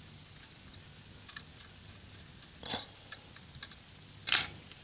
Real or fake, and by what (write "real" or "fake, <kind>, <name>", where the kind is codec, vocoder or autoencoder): real